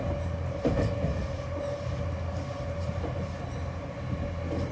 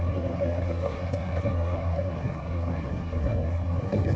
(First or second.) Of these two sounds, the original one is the first